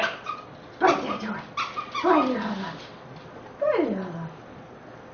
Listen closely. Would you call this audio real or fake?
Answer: real